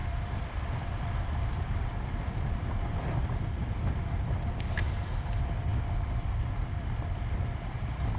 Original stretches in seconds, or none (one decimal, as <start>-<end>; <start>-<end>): none